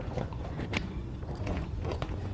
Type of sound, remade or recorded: remade